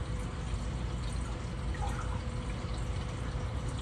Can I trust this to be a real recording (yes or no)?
yes